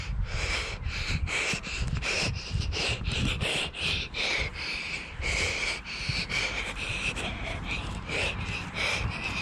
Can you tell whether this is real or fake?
fake